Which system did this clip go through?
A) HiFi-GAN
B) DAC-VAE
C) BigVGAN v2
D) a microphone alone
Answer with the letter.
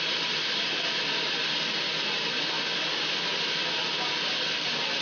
C